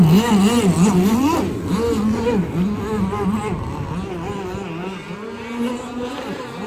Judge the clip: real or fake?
real